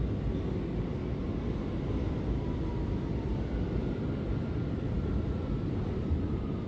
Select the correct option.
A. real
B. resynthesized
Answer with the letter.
A